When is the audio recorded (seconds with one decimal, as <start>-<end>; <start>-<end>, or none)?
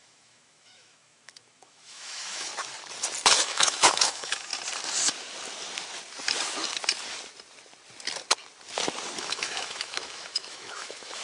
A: 2.5-3.4; 4.5-9.2